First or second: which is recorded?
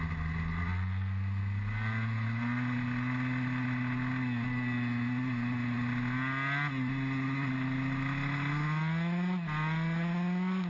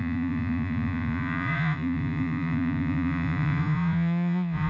first